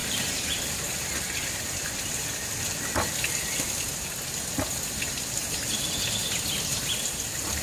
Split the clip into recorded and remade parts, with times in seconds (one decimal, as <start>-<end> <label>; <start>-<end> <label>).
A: 0.0-0.6 remade; 0.6-5.4 recorded; 5.4-5.9 remade; 5.9-7.6 recorded